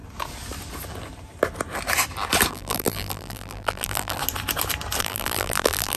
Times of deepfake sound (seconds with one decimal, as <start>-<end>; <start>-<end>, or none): 2.5-4.2; 5.0-6.0